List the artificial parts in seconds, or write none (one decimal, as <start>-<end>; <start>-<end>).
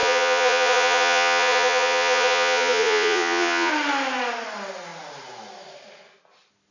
0.0-3.7